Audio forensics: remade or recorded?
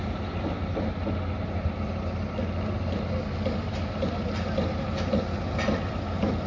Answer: recorded